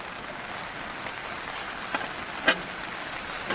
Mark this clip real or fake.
real